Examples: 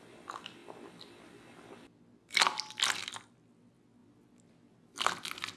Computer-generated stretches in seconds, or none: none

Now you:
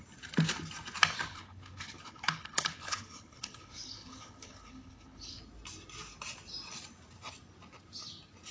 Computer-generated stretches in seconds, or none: 1.3-5.4 (codec, HILCodec)

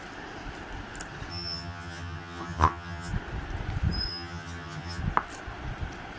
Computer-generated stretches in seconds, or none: 1.3-3.1 (vocoder, HiFi-GAN); 4.1-5.0

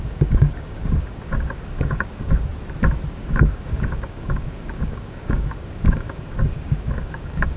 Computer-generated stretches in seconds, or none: 0.0-2.5 (codec, DAC); 3.1-7.6